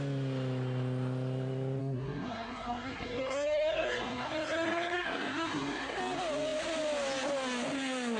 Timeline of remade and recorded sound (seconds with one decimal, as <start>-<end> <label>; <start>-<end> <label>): 0.0-1.8 recorded; 1.8-6.0 remade; 6.0-8.2 recorded